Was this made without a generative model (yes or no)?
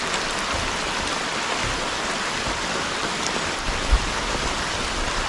no